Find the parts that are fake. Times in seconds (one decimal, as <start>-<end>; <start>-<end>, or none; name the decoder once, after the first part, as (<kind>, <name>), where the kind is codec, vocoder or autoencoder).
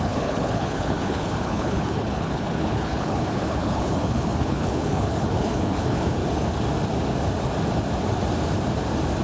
0.0-6.2 (codec, HILCodec)